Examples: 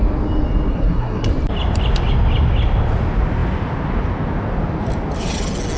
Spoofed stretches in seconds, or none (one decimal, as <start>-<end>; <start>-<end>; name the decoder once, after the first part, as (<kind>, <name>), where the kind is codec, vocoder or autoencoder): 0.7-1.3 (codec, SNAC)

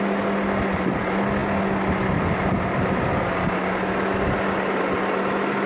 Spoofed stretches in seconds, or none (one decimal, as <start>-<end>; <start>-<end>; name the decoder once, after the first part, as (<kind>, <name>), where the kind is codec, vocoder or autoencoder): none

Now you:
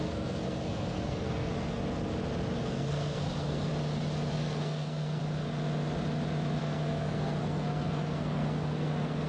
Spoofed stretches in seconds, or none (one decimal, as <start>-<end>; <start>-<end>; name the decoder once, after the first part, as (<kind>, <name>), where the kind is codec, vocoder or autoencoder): 0.0-1.8 (codec, SNAC); 2.6-3.7; 4.3-5.2; 6.6-9.3